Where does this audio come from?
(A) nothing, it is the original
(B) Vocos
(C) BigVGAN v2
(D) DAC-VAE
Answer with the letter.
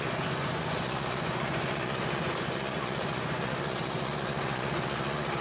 B